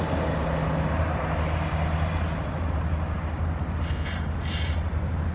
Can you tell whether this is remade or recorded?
recorded